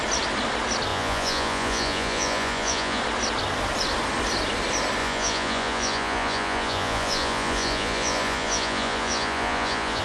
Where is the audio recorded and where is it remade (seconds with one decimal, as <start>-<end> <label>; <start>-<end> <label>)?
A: 0.0-0.9 recorded; 0.9-3.0 remade; 3.0-5.0 recorded; 5.0-10.0 remade